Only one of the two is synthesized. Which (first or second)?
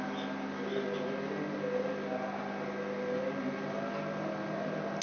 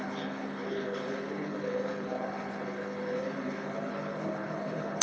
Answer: second